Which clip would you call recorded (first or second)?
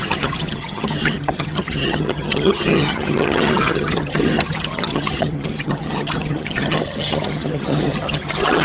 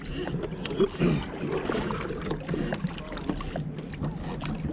second